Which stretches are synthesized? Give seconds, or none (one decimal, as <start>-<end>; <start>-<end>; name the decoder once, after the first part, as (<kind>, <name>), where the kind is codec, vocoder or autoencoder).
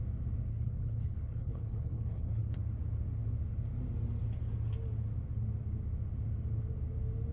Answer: 0.5-2.6 (codec, HILCodec)